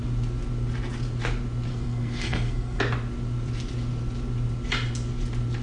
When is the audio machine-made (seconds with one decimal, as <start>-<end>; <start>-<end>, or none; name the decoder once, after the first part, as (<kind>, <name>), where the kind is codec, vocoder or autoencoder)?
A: 1.7-2.8 (codec, SNAC)